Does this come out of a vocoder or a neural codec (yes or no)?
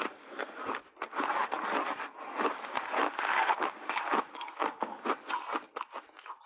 no